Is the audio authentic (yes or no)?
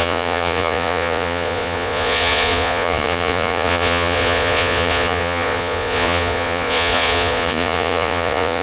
no